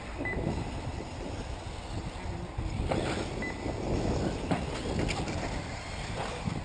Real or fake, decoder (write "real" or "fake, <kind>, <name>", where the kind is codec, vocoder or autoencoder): real